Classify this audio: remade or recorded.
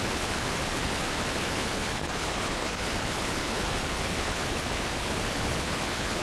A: remade